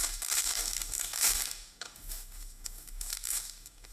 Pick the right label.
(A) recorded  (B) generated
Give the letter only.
B